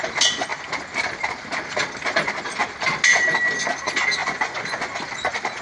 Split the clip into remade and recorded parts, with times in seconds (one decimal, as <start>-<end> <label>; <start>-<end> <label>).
0.0-4.2 recorded; 4.2-5.0 remade; 5.0-5.6 recorded